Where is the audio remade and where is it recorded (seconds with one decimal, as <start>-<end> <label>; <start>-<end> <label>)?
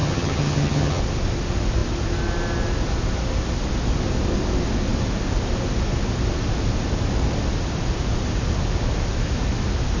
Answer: 0.0-1.0 remade; 1.0-10.0 recorded